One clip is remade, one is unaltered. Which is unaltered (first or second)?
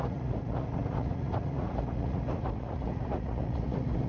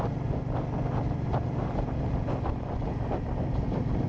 second